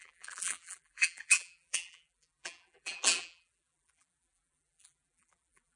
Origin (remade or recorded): remade